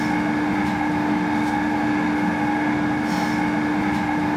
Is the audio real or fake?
real